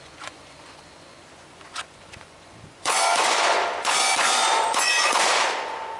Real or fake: fake